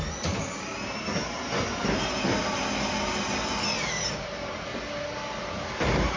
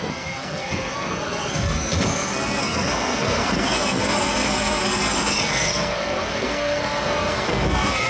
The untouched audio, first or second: first